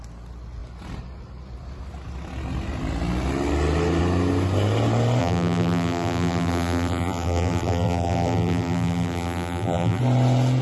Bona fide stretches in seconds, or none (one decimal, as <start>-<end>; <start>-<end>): 0.0-5.2; 10.0-10.6